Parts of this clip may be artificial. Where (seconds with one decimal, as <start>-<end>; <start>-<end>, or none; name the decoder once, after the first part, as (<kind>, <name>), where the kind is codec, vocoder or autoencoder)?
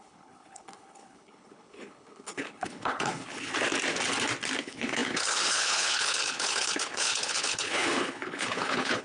0.0-3.5 (codec, HILCodec); 4.6-9.0